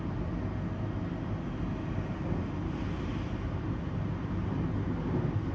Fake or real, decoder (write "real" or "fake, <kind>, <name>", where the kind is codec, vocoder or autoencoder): real